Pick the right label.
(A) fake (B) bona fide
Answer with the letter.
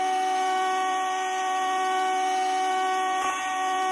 A